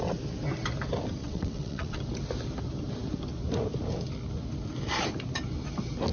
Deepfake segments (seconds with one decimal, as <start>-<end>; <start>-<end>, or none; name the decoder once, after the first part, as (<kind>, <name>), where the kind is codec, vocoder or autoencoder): 1.2-2.0 (vocoder, WaveNeXt)